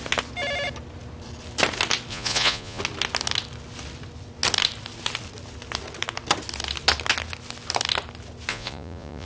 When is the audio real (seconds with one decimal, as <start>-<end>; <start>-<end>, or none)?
0.0-2.1; 2.8-8.5